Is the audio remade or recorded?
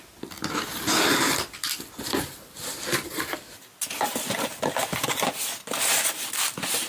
recorded